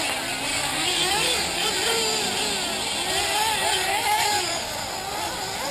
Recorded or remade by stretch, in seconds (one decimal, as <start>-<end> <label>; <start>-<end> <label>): 0.0-0.5 recorded; 0.5-1.7 remade; 1.7-3.6 recorded; 3.6-4.8 remade; 4.8-5.7 recorded